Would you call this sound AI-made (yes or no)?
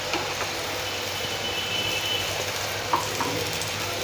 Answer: no